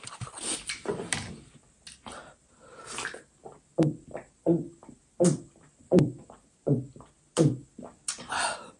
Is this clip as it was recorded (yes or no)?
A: yes